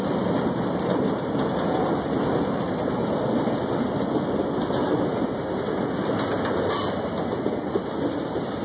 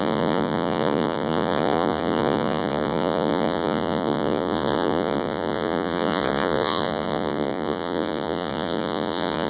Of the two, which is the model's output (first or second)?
second